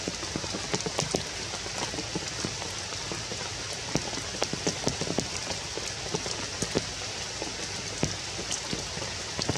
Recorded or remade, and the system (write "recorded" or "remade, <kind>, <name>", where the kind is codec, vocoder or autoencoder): recorded